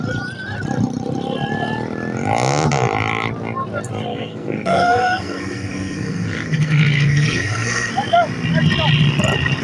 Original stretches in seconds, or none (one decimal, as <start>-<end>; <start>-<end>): 0.0-4.1; 7.9-9.6